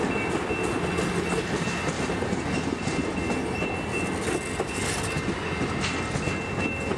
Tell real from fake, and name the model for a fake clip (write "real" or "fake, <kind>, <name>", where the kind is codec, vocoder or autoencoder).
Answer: real